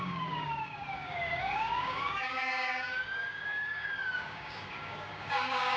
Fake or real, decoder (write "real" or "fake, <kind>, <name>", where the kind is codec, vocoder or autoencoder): fake, codec, DAC